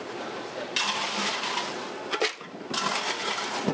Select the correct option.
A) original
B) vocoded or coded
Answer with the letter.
A